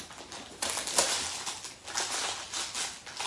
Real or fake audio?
real